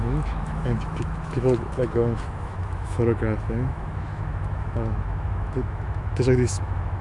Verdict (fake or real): fake